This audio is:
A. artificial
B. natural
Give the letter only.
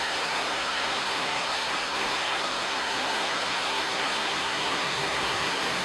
A